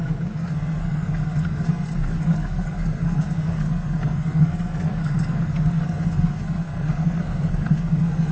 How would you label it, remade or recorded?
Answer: remade